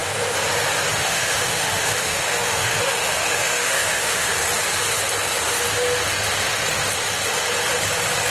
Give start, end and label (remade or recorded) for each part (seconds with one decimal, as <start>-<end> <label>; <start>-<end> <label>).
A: 0.0-1.0 recorded; 1.0-4.3 remade; 4.3-8.3 recorded

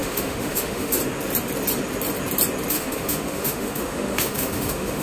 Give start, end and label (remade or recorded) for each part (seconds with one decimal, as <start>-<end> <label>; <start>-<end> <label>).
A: 0.0-1.0 remade; 1.0-2.7 recorded; 2.7-5.0 remade

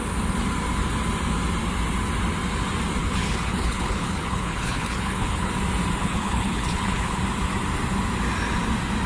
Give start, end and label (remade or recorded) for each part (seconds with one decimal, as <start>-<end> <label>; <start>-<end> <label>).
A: 0.0-3.0 recorded; 3.0-5.5 remade; 5.5-6.0 recorded; 6.0-7.2 remade; 7.2-9.1 recorded

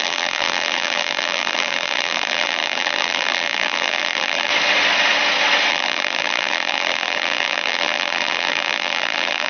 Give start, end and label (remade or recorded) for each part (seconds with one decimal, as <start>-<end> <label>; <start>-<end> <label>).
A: 0.0-4.5 remade; 4.5-5.7 recorded; 5.7-9.5 remade

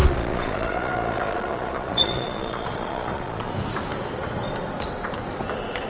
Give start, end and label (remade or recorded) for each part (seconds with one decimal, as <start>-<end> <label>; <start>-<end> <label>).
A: 0.0-3.5 remade; 3.5-5.9 recorded

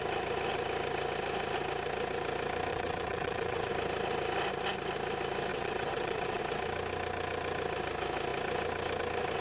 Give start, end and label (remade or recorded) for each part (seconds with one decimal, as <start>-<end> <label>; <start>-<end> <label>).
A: 0.0-2.7 recorded; 2.7-3.7 remade; 3.7-5.5 recorded; 5.5-6.4 remade; 6.4-9.4 recorded

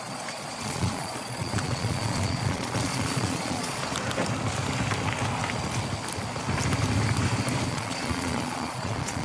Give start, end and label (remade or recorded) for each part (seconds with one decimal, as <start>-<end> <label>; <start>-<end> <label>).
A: 0.0-3.8 remade; 3.8-7.7 recorded; 7.7-9.2 remade